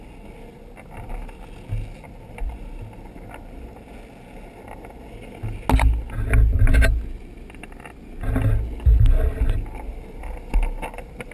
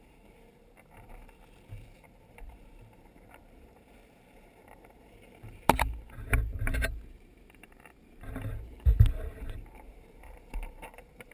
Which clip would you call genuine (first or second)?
first